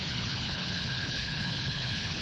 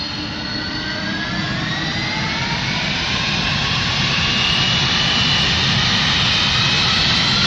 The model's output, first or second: first